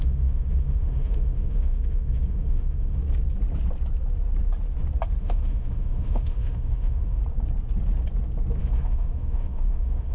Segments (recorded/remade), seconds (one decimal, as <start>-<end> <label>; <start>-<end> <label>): 0.0-3.0 remade; 3.0-5.2 recorded; 5.2-7.2 remade; 7.2-8.6 recorded; 8.6-10.1 remade